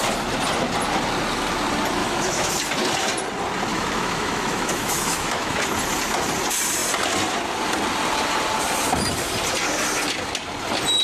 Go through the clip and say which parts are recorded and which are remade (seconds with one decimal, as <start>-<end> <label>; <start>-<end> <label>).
0.0-2.0 recorded; 2.0-2.5 remade; 2.5-3.7 recorded; 3.7-5.6 remade; 5.6-11.0 recorded